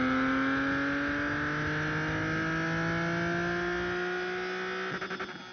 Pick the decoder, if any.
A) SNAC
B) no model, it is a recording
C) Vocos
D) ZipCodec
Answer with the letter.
B